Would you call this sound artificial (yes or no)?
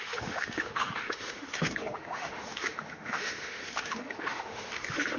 yes